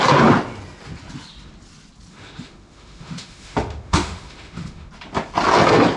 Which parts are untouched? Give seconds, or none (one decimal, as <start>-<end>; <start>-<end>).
0.0-2.1; 4.9-6.0